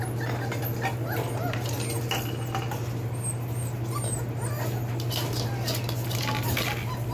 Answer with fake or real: real